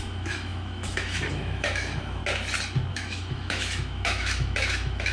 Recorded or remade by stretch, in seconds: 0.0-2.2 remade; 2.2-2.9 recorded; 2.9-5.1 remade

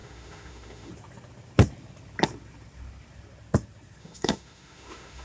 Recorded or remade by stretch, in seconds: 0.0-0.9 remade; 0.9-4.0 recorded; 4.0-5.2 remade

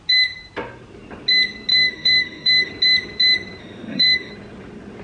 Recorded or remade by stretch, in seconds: 0.0-1.7 recorded; 1.7-2.7 remade; 2.7-3.6 recorded; 3.6-4.3 remade; 4.3-5.0 recorded

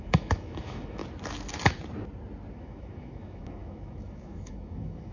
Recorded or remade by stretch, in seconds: 0.0-1.0 remade; 1.0-2.5 recorded; 2.5-5.1 remade

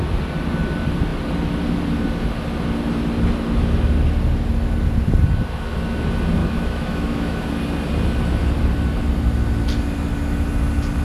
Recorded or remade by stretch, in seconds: 0.0-6.4 recorded; 6.4-7.5 remade; 7.5-11.0 recorded

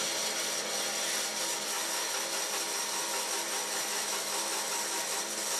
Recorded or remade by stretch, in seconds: 0.0-5.6 recorded